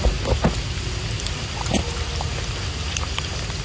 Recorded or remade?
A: recorded